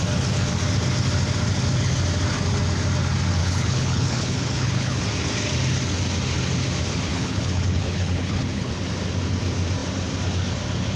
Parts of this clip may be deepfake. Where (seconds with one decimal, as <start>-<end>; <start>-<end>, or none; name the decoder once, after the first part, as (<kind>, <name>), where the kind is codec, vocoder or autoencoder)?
3.4-5.0 (codec, HILCodec); 7.1-8.7